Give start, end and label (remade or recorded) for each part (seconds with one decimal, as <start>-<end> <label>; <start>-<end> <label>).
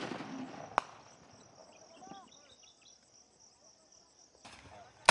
0.0-5.1 recorded